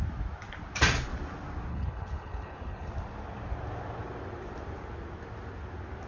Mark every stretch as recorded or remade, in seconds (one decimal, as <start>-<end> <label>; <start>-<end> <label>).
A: 0.0-1.7 recorded; 1.7-2.9 remade; 2.9-6.1 recorded